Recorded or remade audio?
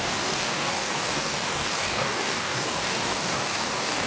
remade